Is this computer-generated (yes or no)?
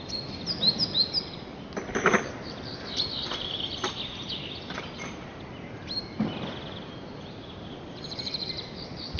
no